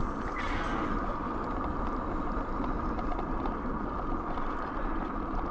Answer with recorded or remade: recorded